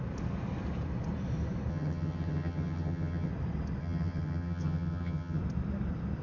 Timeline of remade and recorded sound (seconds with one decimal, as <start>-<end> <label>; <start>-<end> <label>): 0.0-1.7 recorded; 1.7-3.3 remade; 3.3-3.8 recorded; 3.8-5.4 remade; 5.4-6.2 recorded